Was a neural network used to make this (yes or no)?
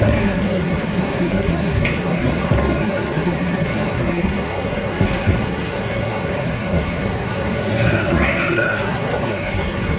yes